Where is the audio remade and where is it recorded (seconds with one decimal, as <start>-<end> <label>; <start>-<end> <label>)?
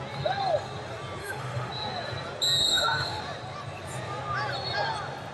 0.0-1.2 recorded; 1.2-1.7 remade; 1.7-2.6 recorded; 2.6-3.2 remade; 3.2-5.3 recorded